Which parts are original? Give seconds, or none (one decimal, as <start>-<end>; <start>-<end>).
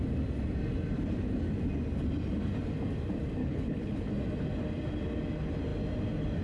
0.0-3.4; 4.1-6.4